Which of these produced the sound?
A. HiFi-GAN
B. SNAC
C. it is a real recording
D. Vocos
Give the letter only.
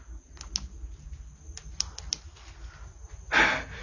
C